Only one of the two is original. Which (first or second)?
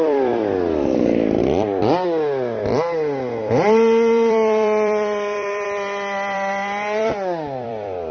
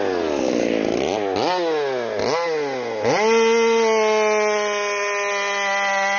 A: second